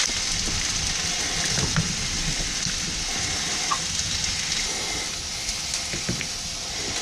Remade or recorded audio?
recorded